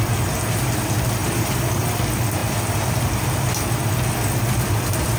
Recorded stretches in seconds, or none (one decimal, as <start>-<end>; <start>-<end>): 0.0-1.2; 1.9-5.2